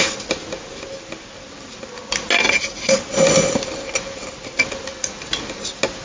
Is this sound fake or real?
real